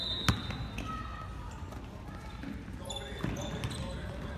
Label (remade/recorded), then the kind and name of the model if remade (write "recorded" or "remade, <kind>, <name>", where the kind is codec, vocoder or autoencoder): recorded